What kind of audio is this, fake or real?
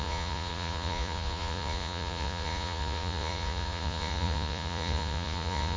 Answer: fake